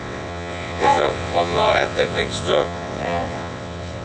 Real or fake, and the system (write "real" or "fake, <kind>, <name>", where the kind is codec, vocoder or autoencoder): fake, vocoder, WaveNeXt